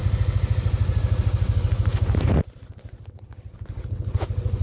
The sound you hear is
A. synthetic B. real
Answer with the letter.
B